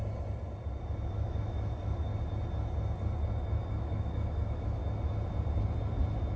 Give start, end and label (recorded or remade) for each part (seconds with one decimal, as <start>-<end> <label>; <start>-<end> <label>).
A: 0.0-1.1 recorded; 1.1-2.1 remade; 2.1-3.7 recorded; 3.7-4.8 remade; 4.8-6.4 recorded